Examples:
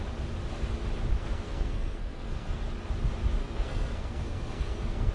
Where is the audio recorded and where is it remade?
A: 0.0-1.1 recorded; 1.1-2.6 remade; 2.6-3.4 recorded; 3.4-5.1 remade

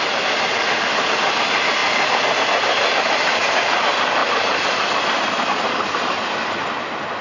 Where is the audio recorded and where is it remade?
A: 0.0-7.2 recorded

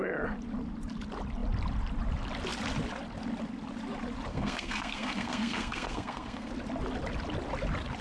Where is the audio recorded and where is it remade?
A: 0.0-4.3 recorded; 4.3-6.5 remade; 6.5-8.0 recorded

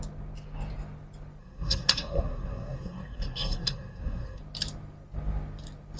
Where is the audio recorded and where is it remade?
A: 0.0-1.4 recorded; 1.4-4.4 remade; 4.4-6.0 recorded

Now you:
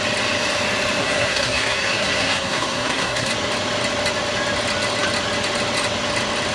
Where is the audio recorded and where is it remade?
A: 0.0-1.0 recorded; 1.0-3.3 remade; 3.3-6.5 recorded